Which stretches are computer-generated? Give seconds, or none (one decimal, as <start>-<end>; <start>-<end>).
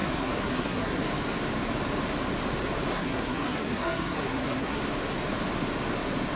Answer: 0.0-1.0; 2.9-4.8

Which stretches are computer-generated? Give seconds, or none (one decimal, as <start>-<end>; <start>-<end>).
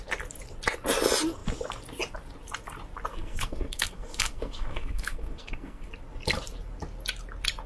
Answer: 3.1-5.9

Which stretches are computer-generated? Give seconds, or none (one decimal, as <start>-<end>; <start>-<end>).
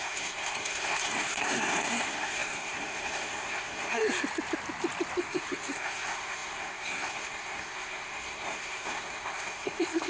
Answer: 0.0-4.0; 5.2-10.1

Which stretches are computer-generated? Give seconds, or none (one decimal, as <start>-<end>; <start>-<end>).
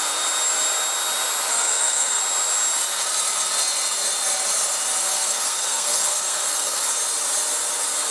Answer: 1.5-2.2; 5.0-6.9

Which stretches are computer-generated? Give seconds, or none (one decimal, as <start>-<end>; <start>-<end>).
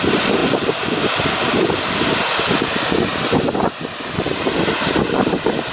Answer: none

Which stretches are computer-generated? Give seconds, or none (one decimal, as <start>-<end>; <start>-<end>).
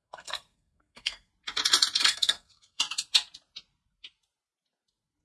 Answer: 0.0-1.3; 2.0-2.8